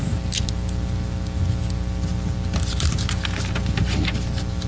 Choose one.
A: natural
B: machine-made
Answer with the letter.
A